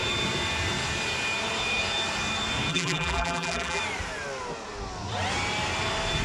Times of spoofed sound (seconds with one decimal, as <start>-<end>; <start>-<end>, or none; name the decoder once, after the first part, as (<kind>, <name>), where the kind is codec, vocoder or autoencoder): 2.7-3.8 (vocoder, BigVGAN v2)

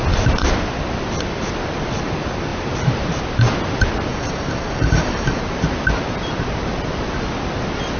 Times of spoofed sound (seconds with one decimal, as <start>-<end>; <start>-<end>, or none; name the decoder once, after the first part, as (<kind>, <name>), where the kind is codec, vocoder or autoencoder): 4.1-5.4 (vocoder, BigVGAN v2)

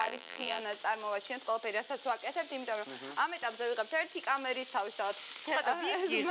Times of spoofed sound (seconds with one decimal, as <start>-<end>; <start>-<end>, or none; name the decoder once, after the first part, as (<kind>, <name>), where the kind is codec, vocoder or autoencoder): 0.0-0.6 (vocoder, BigVGAN v2)